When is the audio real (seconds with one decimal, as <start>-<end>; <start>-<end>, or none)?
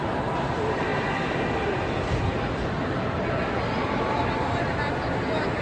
0.0-5.6